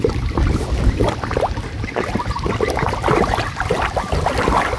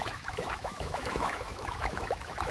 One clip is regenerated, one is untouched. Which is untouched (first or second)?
first